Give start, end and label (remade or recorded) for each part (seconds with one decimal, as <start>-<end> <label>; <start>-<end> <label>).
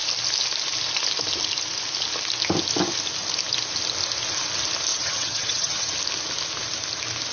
0.0-4.9 recorded; 4.9-5.9 remade; 5.9-7.3 recorded